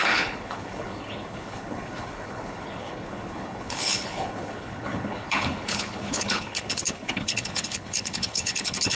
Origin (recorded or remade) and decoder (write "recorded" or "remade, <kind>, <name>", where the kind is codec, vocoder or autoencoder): remade, codec, HILCodec